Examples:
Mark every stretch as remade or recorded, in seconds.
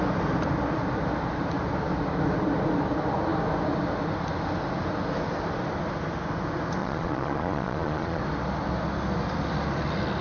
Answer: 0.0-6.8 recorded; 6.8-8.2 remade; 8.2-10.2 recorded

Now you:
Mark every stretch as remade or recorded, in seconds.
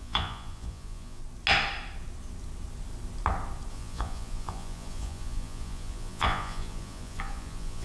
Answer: 0.0-1.2 remade; 1.2-3.7 recorded; 3.7-7.8 remade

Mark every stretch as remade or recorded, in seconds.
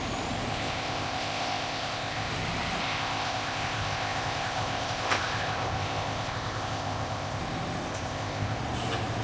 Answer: 0.0-0.5 recorded; 0.5-2.3 remade; 2.3-2.8 recorded; 2.8-7.4 remade; 7.4-7.9 recorded; 7.9-8.6 remade; 8.6-9.2 recorded